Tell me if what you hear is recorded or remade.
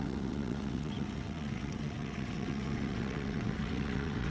remade